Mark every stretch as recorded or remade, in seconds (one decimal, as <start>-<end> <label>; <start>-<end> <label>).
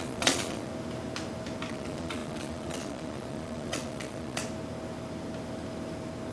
0.0-0.7 remade; 0.7-1.7 recorded; 1.7-4.4 remade; 4.4-6.3 recorded